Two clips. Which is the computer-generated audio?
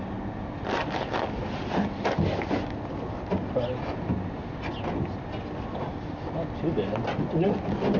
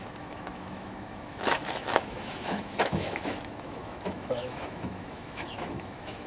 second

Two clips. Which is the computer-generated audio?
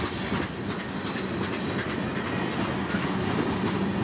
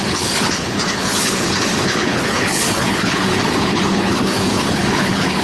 second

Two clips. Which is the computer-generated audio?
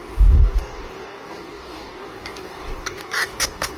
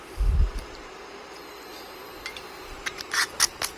first